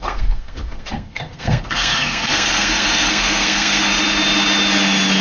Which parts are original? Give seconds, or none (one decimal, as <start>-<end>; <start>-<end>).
3.9-5.2